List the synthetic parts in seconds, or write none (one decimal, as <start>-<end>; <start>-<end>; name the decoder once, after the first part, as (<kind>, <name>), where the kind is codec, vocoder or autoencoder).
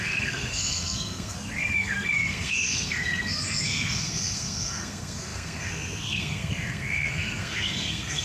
0.0-8.2 (codec, SNAC)